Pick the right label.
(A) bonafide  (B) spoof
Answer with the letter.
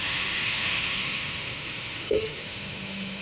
B